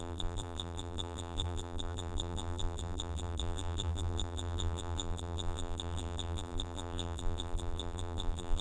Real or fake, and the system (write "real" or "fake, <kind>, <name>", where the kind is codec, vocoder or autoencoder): fake, vocoder, BigVGAN v2